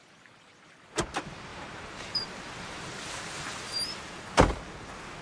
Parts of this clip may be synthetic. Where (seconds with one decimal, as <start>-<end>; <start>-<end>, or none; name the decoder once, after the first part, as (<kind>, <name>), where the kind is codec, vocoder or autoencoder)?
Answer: 1.5-4.6 (vocoder, BigVGAN v2)